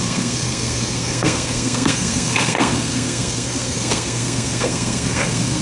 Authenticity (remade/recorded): remade